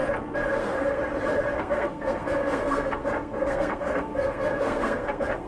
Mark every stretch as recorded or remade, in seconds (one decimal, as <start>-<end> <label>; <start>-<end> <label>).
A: 0.0-0.6 recorded; 0.6-1.0 remade; 1.0-1.6 recorded; 1.6-5.5 remade